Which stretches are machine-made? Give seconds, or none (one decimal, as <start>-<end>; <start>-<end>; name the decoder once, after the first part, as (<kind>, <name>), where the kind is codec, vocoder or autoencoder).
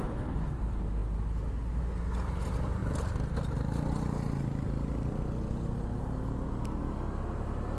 none